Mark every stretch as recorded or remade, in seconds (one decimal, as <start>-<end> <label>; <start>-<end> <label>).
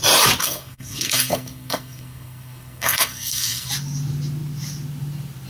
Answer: 0.0-0.4 recorded; 0.4-3.7 remade; 3.7-5.5 recorded